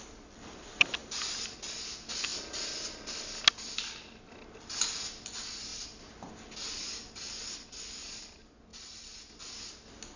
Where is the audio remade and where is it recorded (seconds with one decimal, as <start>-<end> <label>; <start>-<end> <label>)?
0.0-8.7 recorded; 8.7-9.2 remade; 9.2-10.2 recorded